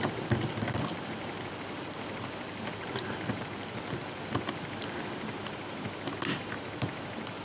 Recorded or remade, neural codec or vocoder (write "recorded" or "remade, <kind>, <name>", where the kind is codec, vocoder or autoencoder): remade, vocoder, BigVGAN v2